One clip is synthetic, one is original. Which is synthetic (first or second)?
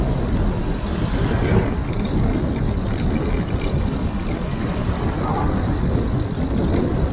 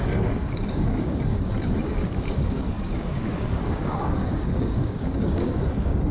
second